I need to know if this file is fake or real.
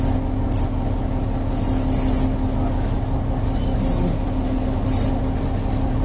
real